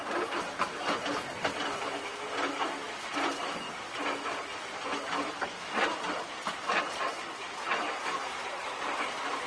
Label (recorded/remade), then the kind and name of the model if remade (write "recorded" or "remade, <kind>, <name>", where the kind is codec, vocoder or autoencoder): recorded